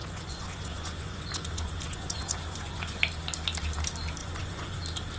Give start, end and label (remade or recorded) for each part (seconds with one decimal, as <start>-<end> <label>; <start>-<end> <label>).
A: 0.0-3.0 remade; 3.0-4.2 recorded; 4.2-4.8 remade; 4.8-5.2 recorded